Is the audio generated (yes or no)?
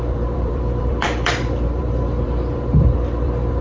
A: yes